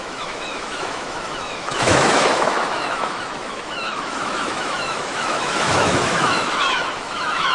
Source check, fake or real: fake